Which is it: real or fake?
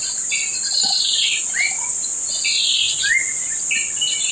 real